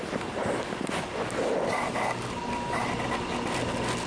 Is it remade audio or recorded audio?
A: recorded